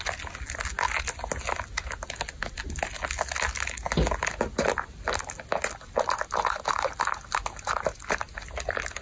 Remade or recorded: recorded